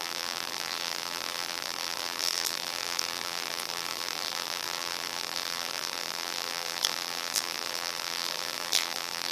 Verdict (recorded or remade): remade